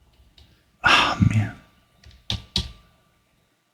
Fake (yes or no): no